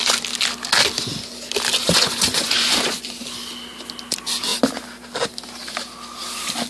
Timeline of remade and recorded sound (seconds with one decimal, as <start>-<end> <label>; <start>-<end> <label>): 0.0-1.8 recorded; 1.8-3.2 remade; 3.2-6.7 recorded